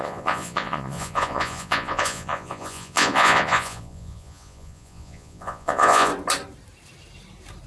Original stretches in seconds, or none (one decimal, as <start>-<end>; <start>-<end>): 6.1-7.7